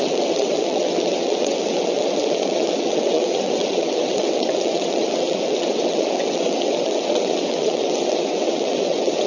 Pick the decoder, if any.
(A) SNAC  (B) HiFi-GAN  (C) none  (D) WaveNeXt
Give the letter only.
D